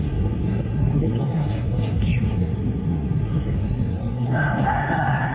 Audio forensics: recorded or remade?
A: remade